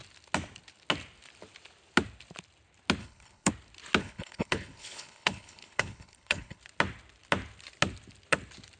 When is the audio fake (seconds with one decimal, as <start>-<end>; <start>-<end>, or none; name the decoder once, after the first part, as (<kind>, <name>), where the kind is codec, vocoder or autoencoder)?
3.0-3.5 (codec, HILCodec); 4.0-6.6